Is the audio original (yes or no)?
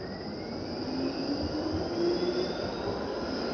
yes